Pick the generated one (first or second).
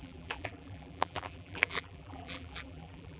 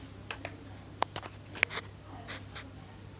first